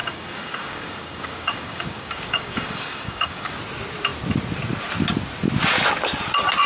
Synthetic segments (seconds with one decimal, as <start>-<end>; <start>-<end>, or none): 0.0-3.6